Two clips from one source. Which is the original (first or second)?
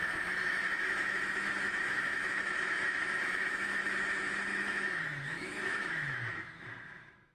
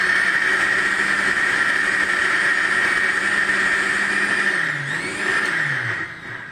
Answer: second